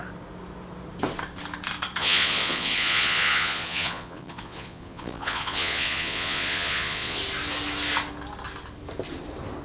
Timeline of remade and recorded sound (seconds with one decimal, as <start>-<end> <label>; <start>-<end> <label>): 0.0-2.0 recorded; 2.0-7.2 remade; 7.2-9.6 recorded